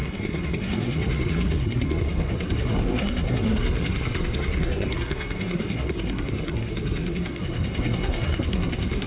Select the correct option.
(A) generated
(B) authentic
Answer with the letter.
A